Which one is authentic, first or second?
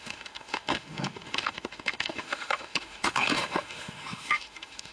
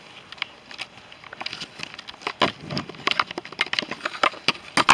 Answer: second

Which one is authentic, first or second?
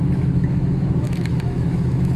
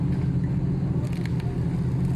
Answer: second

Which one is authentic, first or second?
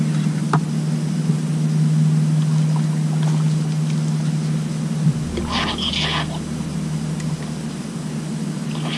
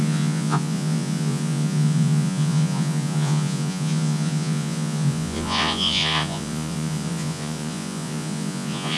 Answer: first